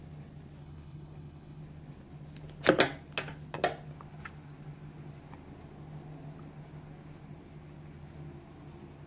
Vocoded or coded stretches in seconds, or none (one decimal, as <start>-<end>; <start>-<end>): 0.6-1.6